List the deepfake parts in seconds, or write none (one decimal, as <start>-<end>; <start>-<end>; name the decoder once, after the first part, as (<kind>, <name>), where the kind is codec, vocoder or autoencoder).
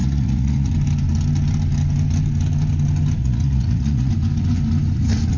0.0-0.7 (vocoder, Vocos); 3.2-4.1